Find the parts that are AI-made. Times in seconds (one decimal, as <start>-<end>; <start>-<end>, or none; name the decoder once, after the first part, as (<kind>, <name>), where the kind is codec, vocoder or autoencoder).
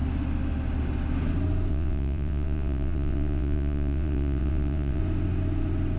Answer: 1.7-5.0 (vocoder, WaveNeXt)